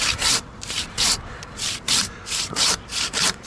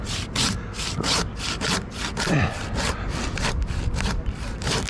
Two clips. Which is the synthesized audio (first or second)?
first